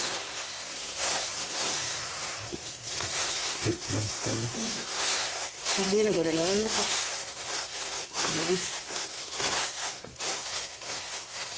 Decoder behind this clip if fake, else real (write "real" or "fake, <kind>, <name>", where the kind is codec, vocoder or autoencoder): fake, codec, SNAC